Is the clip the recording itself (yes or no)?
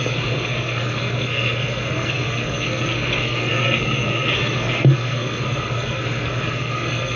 no